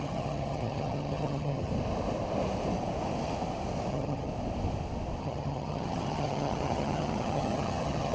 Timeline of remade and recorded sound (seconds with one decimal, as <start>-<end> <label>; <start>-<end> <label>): 0.0-1.7 remade; 1.7-3.9 recorded; 3.9-4.3 remade; 4.3-5.2 recorded; 5.2-8.1 remade

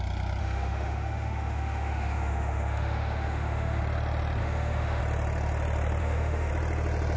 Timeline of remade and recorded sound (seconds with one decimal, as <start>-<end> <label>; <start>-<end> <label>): 0.0-0.4 recorded; 0.4-3.8 remade; 3.8-4.4 recorded; 4.4-5.0 remade; 5.0-6.0 recorded; 6.0-6.5 remade; 6.5-7.2 recorded

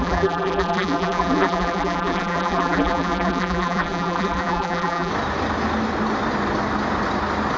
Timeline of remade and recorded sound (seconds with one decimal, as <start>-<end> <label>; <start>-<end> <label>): 0.0-5.1 remade; 5.1-7.6 recorded

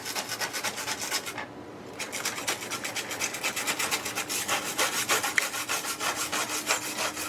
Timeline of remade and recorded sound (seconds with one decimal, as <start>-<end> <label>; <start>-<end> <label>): 0.0-7.3 recorded

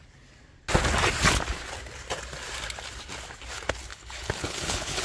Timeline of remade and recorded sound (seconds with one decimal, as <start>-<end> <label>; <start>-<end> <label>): 0.0-3.9 recorded; 3.9-5.0 remade

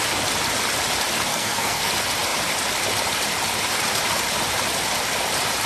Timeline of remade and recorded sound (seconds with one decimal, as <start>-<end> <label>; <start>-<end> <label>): 0.0-1.3 recorded; 1.3-1.9 remade; 1.9-5.7 recorded

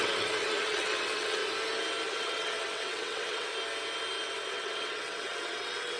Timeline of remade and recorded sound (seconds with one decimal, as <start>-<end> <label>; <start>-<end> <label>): 0.0-1.4 remade; 1.4-2.1 recorded; 2.1-3.5 remade; 3.5-4.5 recorded; 4.5-6.0 remade

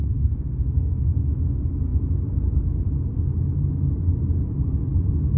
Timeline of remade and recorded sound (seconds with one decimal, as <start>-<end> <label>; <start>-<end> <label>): 0.0-1.3 remade; 1.3-5.4 recorded